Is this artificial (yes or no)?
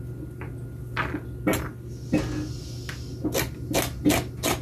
no